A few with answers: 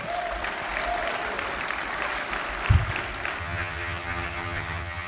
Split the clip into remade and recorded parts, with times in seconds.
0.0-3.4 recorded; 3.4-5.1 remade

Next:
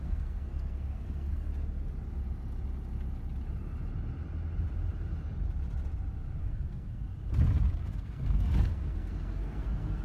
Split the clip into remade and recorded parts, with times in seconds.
0.0-1.5 remade; 1.5-6.4 recorded; 6.4-7.1 remade; 7.1-7.8 recorded; 7.8-10.0 remade

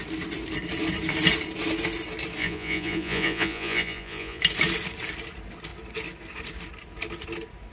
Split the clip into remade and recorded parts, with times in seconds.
0.0-2.4 recorded; 2.4-4.4 remade; 4.4-7.7 recorded